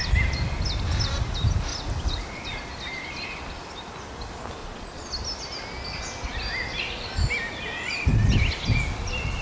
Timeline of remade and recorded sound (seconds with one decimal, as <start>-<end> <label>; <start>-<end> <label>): 0.0-4.6 recorded; 4.6-5.1 remade; 5.1-9.4 recorded